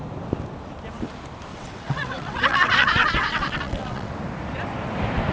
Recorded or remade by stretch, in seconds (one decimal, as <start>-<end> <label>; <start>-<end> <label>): 0.0-1.5 recorded; 1.5-4.1 remade; 4.1-5.3 recorded

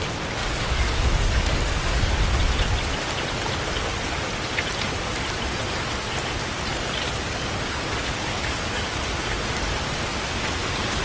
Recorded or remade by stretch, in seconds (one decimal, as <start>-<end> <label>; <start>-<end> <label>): 0.0-0.4 recorded; 0.4-2.2 remade; 2.2-6.7 recorded; 6.7-8.9 remade; 8.9-11.0 recorded

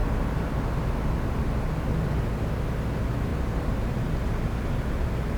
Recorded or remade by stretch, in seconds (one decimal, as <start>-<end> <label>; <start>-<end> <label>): 0.0-3.3 recorded; 3.3-4.3 remade; 4.3-5.4 recorded